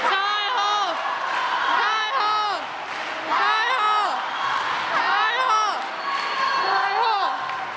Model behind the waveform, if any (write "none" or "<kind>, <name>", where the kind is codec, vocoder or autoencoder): none